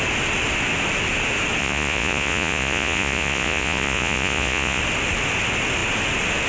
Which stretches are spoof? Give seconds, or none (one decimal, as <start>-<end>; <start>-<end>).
1.6-4.8